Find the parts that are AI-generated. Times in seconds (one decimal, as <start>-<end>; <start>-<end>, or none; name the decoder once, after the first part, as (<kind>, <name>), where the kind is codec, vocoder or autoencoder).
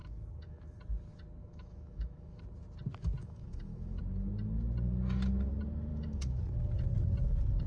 0.0-0.8 (autoencoder, DAC-VAE); 1.4-2.4; 3.2-4.0; 5.9-6.4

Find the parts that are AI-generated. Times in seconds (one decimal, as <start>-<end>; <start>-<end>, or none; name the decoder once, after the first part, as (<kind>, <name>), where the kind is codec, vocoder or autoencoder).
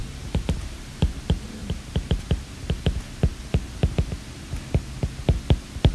0.0-1.0 (vocoder, BigVGAN v2); 1.6-2.5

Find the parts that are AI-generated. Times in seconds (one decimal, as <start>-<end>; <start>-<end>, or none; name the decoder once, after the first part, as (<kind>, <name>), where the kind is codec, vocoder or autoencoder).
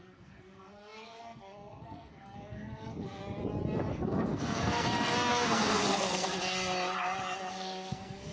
0.0-3.2 (codec, SNAC); 3.9-6.4; 7.5-8.3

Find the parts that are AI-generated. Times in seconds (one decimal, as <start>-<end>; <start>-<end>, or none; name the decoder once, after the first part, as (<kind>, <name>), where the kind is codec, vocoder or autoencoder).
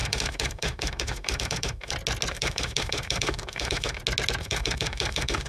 0.0-1.9 (autoencoder, DAC-VAE); 2.3-4.0; 4.4-5.5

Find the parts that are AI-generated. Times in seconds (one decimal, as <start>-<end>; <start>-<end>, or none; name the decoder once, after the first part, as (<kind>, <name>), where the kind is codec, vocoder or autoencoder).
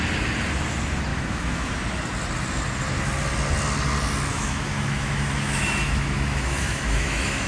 1.1-1.7 (autoencoder, DAC-VAE); 4.3-7.5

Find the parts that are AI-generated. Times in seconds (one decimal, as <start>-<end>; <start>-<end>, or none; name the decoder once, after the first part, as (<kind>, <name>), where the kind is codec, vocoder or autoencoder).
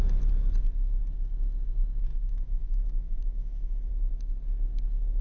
2.1-3.9 (autoencoder, DAC-VAE)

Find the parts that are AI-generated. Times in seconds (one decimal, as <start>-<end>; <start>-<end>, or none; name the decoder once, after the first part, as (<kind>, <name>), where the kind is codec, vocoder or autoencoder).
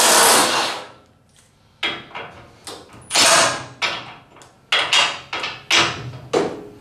0.4-1.1 (codec, DAC)